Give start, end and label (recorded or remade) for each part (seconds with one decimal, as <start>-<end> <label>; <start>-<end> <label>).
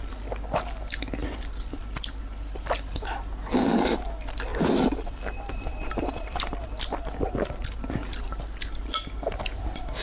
0.0-1.2 recorded; 1.2-2.2 remade; 2.2-4.5 recorded; 4.5-6.7 remade; 6.7-10.0 recorded